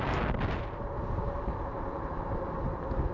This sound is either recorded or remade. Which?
recorded